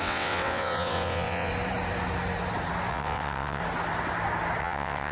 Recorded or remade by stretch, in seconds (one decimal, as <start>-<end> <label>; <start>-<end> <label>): 0.0-1.5 remade; 1.5-2.9 recorded; 2.9-3.6 remade; 3.6-4.6 recorded; 4.6-5.1 remade